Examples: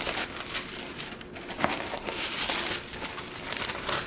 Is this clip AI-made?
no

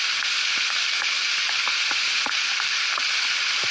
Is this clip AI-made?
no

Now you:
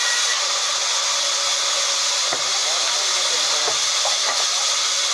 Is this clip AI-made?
no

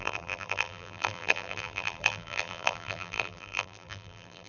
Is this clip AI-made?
yes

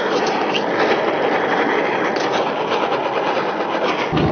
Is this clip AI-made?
no